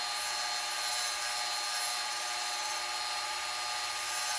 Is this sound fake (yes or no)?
no